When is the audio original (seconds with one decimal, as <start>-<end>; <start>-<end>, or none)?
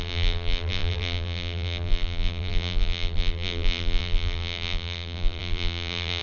none